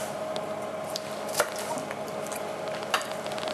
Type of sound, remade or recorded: recorded